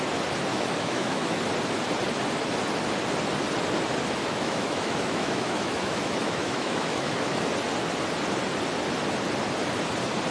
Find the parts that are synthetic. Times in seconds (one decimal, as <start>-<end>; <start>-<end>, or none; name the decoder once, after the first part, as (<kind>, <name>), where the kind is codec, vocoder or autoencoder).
0.5-1.4 (autoencoder, DAC-VAE); 4.2-7.4